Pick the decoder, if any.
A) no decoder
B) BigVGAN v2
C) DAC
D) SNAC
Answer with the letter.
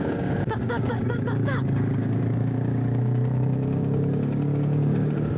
C